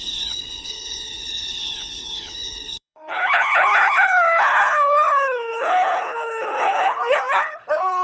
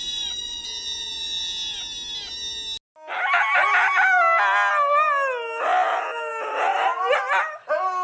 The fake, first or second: first